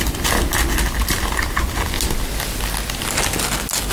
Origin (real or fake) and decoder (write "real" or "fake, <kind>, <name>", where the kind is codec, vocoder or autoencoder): real